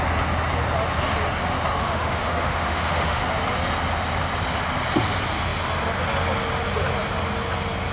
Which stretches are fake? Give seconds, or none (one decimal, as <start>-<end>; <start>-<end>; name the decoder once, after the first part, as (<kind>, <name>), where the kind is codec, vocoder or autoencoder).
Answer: 1.8-3.2 (autoencoder, DAC-VAE)